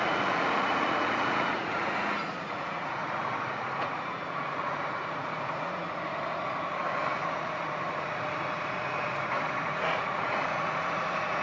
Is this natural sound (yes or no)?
no